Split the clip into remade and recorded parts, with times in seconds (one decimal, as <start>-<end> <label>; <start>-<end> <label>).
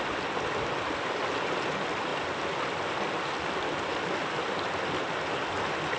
0.0-2.1 recorded; 2.1-3.7 remade; 3.7-6.0 recorded